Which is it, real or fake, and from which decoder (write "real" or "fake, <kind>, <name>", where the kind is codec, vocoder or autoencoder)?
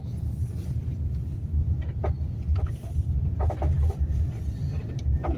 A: real